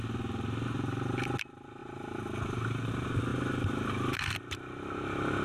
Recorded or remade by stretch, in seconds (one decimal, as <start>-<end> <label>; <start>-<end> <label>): 0.0-5.4 recorded